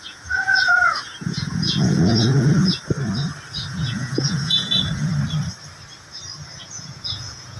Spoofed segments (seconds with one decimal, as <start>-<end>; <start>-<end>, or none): 0.0-2.6; 3.7-5.1; 6.6-7.6

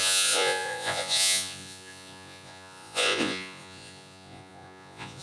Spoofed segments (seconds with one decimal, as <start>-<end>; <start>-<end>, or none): 0.0-5.2

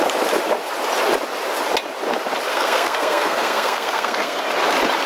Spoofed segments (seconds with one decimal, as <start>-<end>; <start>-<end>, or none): 2.5-4.4

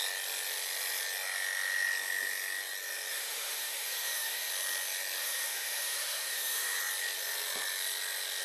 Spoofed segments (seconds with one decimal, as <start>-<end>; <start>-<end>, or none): 3.1-4.5; 5.2-6.8

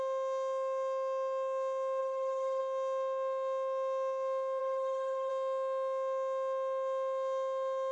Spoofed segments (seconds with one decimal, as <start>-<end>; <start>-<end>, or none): 2.0-2.6; 4.6-5.3

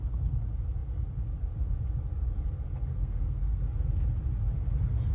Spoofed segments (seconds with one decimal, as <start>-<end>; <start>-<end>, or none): 2.9-3.6

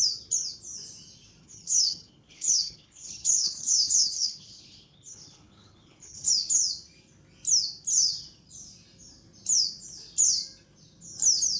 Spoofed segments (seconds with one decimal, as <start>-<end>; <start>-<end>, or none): 1.4-6.3

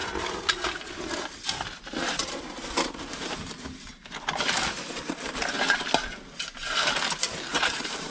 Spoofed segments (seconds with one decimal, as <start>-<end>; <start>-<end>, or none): 2.2-5.8; 7.5-8.1